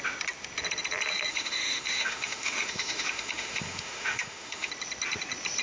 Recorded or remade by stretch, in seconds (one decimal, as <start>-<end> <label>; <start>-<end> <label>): 0.0-1.3 recorded; 1.3-4.7 remade; 4.7-5.6 recorded